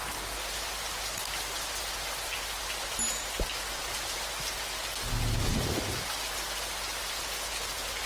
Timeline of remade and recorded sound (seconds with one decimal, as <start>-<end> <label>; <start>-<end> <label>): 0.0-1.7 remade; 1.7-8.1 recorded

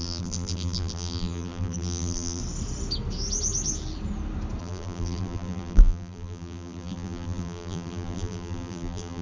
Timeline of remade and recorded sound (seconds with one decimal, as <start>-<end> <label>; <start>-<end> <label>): 0.0-2.4 remade; 2.4-4.6 recorded; 4.6-9.2 remade

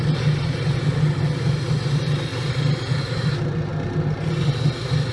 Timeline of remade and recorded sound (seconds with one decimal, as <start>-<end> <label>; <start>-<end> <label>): 0.0-5.1 recorded